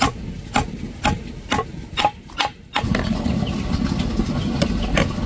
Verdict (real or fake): real